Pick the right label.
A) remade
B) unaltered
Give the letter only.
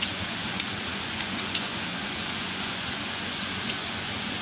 A